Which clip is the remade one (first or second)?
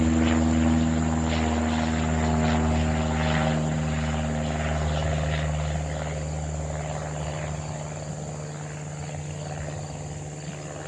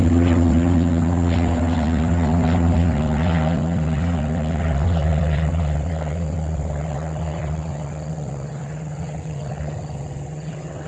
second